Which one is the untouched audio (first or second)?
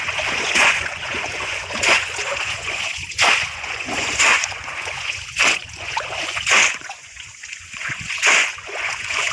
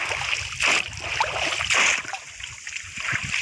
second